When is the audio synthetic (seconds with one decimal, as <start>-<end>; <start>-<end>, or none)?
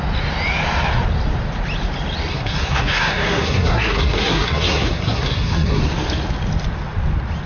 2.3-5.8